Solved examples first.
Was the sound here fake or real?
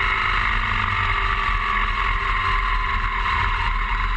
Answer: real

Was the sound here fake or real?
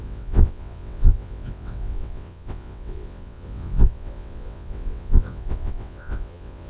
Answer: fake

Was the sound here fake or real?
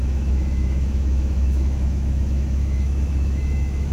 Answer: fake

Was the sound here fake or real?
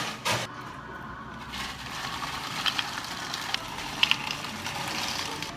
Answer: fake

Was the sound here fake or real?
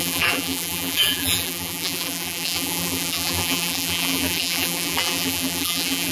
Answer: fake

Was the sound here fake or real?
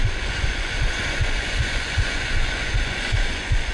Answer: fake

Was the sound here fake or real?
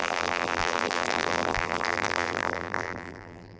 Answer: fake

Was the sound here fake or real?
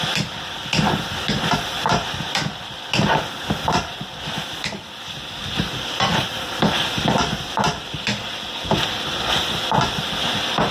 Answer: real